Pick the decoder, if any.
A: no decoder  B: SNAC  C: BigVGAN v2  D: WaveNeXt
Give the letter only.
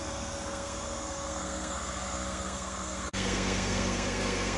B